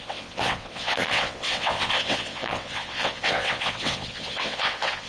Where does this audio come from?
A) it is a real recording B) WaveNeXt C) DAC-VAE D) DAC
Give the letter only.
B